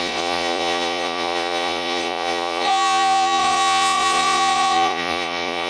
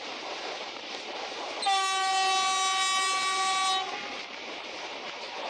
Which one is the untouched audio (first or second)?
second